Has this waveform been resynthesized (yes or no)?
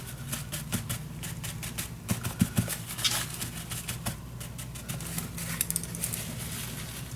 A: no